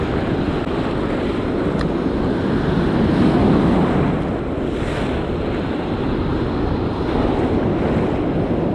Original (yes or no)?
yes